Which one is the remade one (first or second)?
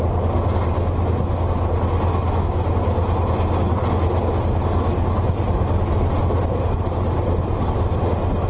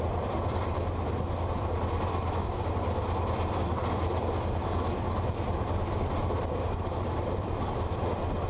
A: second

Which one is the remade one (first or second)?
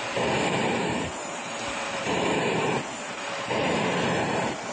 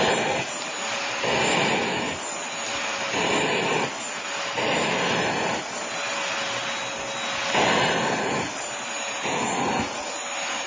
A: first